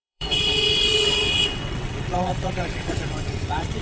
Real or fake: fake